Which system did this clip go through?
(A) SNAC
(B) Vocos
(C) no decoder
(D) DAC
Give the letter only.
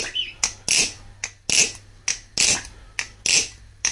C